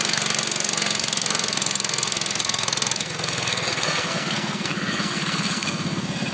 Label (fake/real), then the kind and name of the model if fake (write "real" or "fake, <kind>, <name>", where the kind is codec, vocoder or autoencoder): fake, codec, SNAC